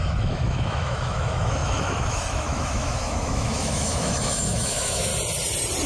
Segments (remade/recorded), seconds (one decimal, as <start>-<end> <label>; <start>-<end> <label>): 0.0-5.1 remade; 5.1-5.9 recorded